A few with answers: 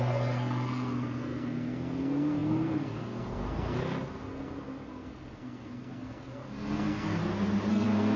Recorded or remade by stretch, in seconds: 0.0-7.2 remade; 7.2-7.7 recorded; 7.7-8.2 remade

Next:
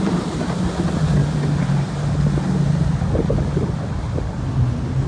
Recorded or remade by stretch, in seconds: 0.0-5.1 recorded

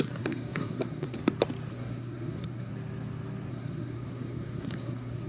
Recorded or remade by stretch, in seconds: 0.0-1.2 remade; 1.2-1.7 recorded; 1.7-2.7 remade; 2.7-3.5 recorded; 3.5-5.3 remade